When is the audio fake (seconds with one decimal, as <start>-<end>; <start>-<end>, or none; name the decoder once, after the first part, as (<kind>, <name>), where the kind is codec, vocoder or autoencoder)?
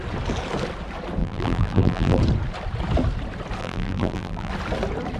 1.2-2.2 (vocoder, BigVGAN v2); 3.6-4.5